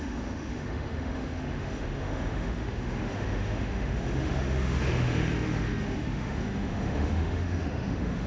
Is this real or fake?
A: fake